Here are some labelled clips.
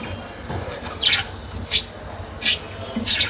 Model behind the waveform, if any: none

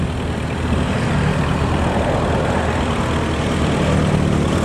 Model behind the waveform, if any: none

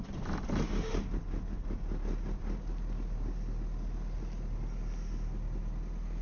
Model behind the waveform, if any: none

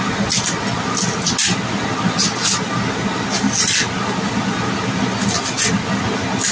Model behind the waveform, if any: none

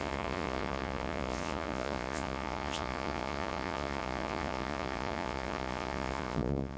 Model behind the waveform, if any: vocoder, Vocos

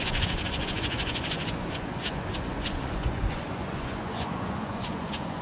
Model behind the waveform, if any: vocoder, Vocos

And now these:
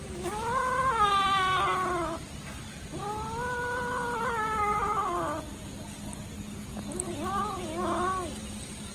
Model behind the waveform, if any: none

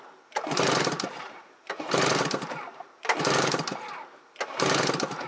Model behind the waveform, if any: vocoder, BigVGAN v2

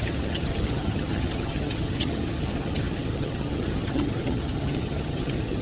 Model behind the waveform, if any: vocoder, HiFi-GAN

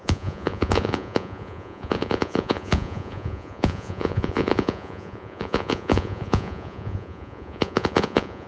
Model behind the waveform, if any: vocoder, Vocos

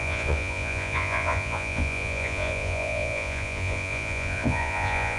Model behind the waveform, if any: vocoder, Vocos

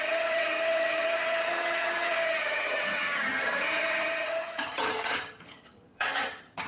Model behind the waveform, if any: vocoder, HiFi-GAN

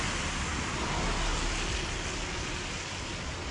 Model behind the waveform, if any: none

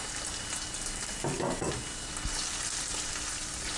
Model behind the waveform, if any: none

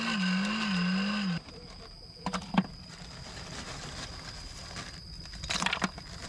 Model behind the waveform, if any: none